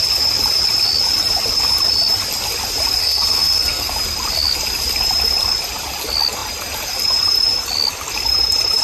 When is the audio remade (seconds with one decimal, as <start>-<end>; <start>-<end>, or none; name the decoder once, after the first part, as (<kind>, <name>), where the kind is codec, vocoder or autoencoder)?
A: 3.0-3.9 (codec, SNAC)